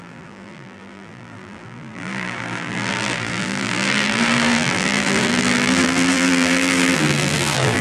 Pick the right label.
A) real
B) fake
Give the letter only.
B